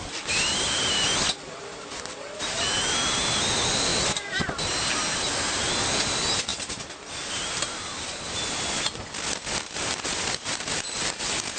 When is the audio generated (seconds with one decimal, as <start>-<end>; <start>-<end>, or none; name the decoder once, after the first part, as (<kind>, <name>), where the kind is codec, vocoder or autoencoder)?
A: none